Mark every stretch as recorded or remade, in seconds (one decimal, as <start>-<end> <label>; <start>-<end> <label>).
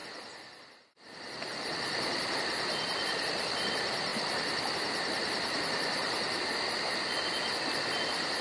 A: 0.0-8.4 recorded